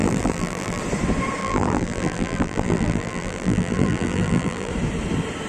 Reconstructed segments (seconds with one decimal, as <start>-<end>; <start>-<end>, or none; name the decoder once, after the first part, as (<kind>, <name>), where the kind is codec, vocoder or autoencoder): 0.0-0.8 (vocoder, BigVGAN v2); 1.4-4.7